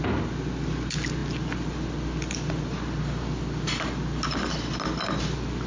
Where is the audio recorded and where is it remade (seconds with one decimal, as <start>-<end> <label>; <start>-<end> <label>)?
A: 0.0-5.7 recorded